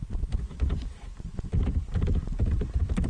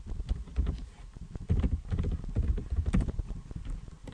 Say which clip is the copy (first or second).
first